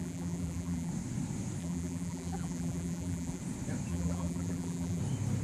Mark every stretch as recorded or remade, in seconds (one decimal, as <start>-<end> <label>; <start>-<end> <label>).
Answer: 0.0-0.9 remade; 0.9-1.6 recorded; 1.6-3.4 remade; 3.4-3.9 recorded; 3.9-5.0 remade; 5.0-5.4 recorded